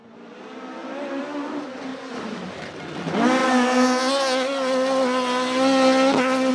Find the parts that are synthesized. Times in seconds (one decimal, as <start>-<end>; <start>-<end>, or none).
0.0-1.2; 1.9-2.8